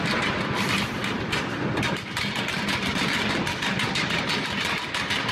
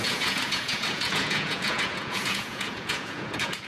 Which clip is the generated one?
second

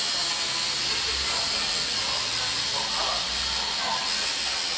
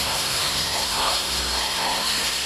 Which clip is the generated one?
second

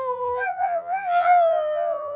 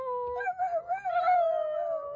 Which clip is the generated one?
first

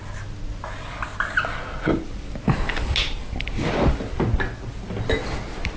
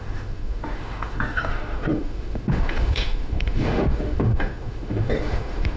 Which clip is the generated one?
second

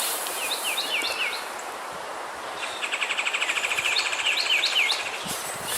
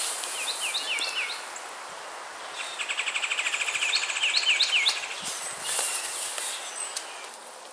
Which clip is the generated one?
first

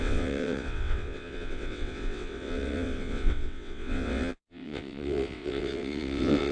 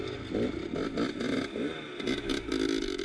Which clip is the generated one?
first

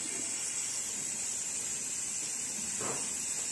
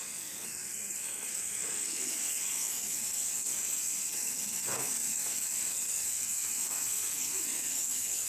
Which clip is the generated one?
second